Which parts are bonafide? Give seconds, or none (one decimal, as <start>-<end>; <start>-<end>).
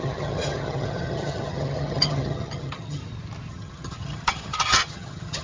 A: 3.0-3.5